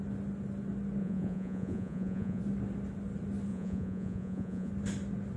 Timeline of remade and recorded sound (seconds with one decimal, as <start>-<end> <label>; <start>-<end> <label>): 0.0-1.0 recorded; 1.0-2.4 remade; 2.4-3.5 recorded; 3.5-4.7 remade; 4.7-5.4 recorded

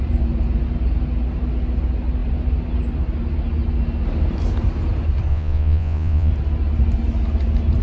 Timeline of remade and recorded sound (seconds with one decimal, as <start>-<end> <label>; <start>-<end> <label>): 0.0-5.3 recorded; 5.3-6.3 remade; 6.3-7.8 recorded

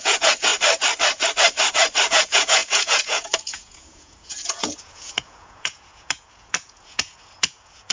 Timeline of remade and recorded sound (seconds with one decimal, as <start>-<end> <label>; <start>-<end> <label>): 0.0-0.5 remade; 0.5-2.1 recorded; 2.1-7.9 remade

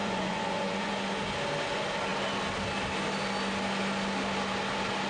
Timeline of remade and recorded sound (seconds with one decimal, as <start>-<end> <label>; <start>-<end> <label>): 0.0-0.9 remade; 0.9-5.1 recorded

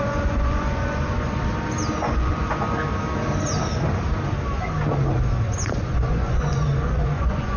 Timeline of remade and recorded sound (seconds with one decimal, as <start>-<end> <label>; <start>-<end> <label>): 0.0-1.4 remade; 1.4-1.9 recorded; 1.9-2.8 remade; 2.8-5.4 recorded; 5.4-7.6 remade

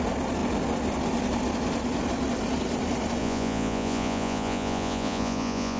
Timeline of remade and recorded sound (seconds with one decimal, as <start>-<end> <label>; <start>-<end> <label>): 0.0-3.2 recorded; 3.2-5.8 remade

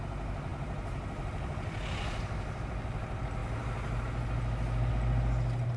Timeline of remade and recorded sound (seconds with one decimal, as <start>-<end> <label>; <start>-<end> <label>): 0.0-5.8 recorded

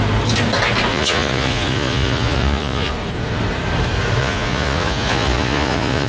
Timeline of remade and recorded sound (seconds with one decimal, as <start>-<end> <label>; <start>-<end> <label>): 0.0-0.9 recorded; 0.9-2.9 remade; 2.9-4.2 recorded; 4.2-6.1 remade